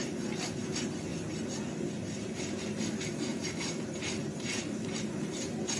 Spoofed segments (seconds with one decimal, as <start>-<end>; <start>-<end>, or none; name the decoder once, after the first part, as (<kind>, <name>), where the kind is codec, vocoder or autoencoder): 0.0-1.1 (vocoder, BigVGAN v2); 2.0-5.8